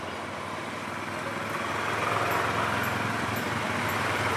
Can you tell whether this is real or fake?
real